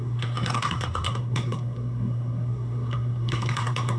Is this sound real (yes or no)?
no